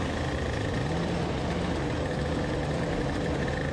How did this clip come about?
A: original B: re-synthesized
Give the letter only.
A